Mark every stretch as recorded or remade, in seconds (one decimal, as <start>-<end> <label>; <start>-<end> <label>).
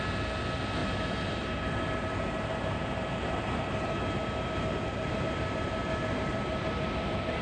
0.0-0.8 recorded; 0.8-5.2 remade; 5.2-5.8 recorded; 5.8-7.4 remade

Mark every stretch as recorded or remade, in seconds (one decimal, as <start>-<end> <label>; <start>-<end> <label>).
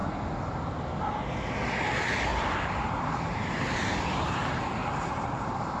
0.0-2.3 recorded; 2.3-3.1 remade; 3.1-4.4 recorded; 4.4-5.8 remade